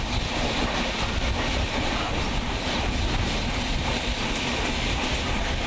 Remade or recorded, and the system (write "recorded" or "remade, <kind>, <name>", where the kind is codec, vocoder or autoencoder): recorded